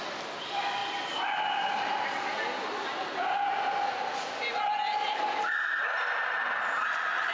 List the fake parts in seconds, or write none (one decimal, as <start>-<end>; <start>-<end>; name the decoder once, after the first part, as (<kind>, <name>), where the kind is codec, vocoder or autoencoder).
0.0-0.8 (vocoder, BigVGAN v2); 3.5-7.3